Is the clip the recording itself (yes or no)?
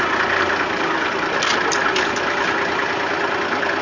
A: yes